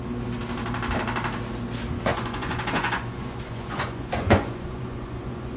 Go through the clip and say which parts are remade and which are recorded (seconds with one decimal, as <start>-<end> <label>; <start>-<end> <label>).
0.0-2.1 recorded; 2.1-5.6 remade

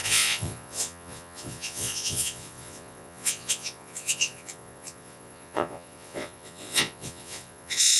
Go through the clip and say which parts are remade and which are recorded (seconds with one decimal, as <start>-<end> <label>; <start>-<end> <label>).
0.0-8.0 remade

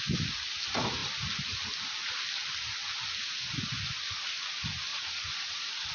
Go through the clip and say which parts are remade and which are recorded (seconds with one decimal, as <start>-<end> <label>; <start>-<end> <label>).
0.0-4.9 recorded; 4.9-5.9 remade

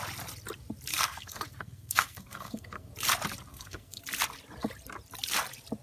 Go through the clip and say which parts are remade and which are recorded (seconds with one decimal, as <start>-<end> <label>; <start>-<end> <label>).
0.0-0.9 recorded; 0.9-2.9 remade; 2.9-3.5 recorded; 3.5-4.0 remade; 4.0-5.8 recorded

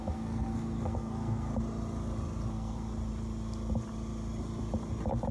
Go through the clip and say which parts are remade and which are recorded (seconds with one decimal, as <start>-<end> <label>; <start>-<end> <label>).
0.0-1.5 remade; 1.5-2.5 recorded; 2.5-2.9 remade; 2.9-5.3 recorded

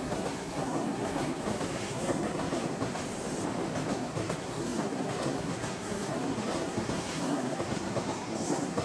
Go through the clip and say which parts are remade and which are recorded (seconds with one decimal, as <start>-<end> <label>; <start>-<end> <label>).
0.0-3.0 remade; 3.0-3.9 recorded; 3.9-8.8 remade

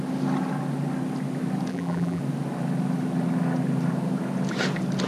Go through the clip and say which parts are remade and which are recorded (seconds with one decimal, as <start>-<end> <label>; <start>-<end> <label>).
0.0-1.7 recorded; 1.7-2.2 remade; 2.2-5.1 recorded

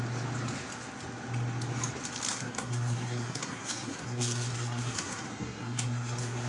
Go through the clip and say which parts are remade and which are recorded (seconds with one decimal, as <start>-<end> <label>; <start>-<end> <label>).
0.0-2.3 recorded; 2.3-6.5 remade